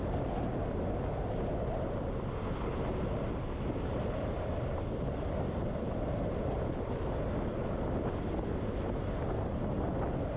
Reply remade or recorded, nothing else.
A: recorded